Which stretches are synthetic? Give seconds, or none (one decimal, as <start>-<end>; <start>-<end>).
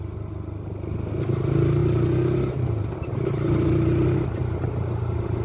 none